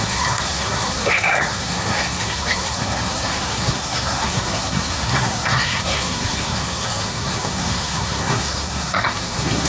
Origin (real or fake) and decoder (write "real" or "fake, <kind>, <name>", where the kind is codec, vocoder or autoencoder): fake, codec, SNAC